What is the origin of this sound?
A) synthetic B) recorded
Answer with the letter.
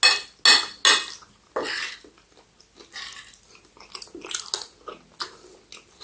B